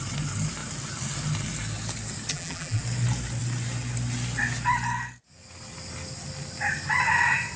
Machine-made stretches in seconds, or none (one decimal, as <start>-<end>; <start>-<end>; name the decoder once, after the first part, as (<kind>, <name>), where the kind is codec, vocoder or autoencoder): 2.3-2.8 (vocoder, BigVGAN v2)